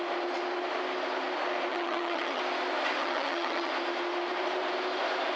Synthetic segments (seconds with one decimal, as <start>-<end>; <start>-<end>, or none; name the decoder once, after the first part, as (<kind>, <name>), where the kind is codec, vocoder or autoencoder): 1.7-2.4 (vocoder, HiFi-GAN); 3.0-3.7